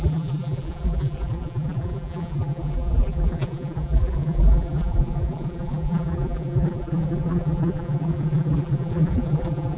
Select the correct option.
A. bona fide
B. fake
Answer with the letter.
B